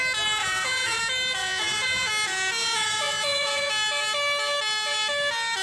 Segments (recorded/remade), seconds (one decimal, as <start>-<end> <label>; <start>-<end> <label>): 0.0-0.4 recorded; 0.4-1.0 remade; 1.0-1.4 recorded; 1.4-2.1 remade; 2.1-2.6 recorded; 2.6-3.7 remade; 3.7-5.6 recorded